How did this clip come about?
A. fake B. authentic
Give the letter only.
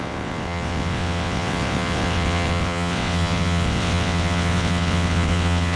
A